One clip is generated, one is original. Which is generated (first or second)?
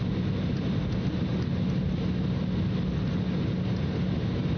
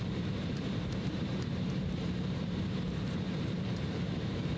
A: second